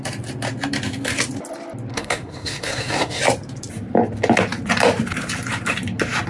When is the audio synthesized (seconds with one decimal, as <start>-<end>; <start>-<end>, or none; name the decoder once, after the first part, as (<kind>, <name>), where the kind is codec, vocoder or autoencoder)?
1.9-3.2 (codec, SNAC)